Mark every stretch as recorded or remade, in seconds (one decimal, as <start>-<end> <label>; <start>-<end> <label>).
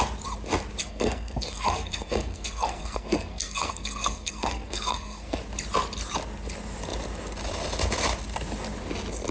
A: 0.0-0.8 recorded; 0.8-5.4 remade; 5.4-9.3 recorded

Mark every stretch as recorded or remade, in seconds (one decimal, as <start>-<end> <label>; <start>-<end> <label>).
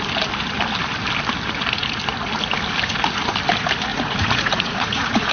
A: 0.0-3.9 recorded; 3.9-5.3 remade